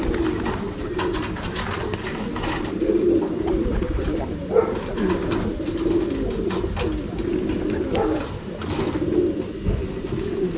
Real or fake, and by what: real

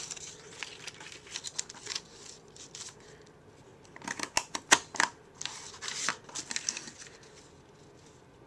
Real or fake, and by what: real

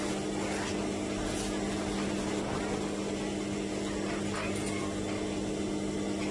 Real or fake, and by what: real